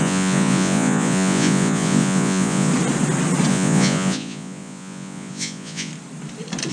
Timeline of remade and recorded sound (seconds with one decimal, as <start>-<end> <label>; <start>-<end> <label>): 0.0-2.7 remade; 2.7-3.5 recorded; 3.5-5.9 remade; 5.9-6.7 recorded

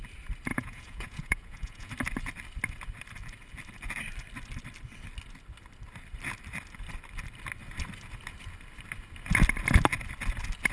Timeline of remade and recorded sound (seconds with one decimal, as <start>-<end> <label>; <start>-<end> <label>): 0.0-0.5 recorded; 0.5-1.9 remade; 1.9-10.7 recorded

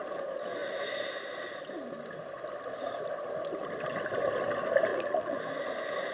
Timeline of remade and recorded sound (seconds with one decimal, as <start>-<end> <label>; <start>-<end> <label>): 0.0-4.9 recorded; 4.9-5.4 remade; 5.4-6.1 recorded

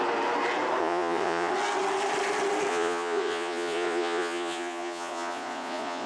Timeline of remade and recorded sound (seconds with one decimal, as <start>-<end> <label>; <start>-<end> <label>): 0.0-0.8 recorded; 0.8-1.5 remade; 1.5-2.7 recorded; 2.7-6.1 remade

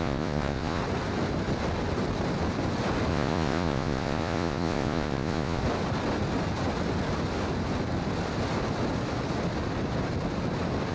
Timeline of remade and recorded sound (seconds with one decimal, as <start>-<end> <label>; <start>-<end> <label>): 0.0-0.8 remade; 0.8-3.1 recorded; 3.1-5.6 remade; 5.6-10.9 recorded